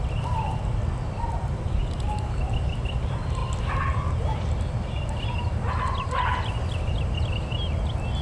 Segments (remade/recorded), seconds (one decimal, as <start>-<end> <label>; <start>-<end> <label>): 0.0-8.2 recorded